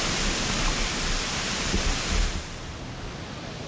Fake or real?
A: real